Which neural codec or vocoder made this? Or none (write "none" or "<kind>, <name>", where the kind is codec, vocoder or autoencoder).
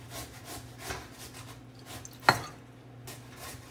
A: none